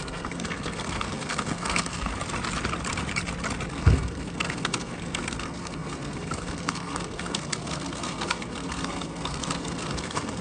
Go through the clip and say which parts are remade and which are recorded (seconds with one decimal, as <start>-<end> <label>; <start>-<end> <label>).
0.0-2.1 remade; 2.1-3.7 recorded; 3.7-10.4 remade